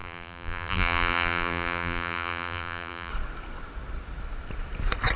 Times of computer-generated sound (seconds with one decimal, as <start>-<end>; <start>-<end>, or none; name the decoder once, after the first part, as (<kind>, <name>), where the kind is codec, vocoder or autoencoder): 0.0-3.1 (vocoder, BigVGAN v2)